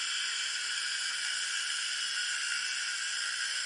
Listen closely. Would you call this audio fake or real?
real